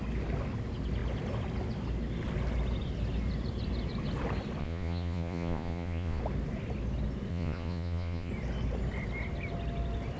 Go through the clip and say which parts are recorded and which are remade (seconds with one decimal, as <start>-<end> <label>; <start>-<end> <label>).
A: 0.0-4.6 recorded; 4.6-6.2 remade; 6.2-7.3 recorded; 7.3-8.3 remade; 8.3-10.2 recorded